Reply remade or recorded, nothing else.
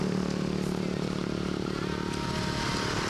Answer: recorded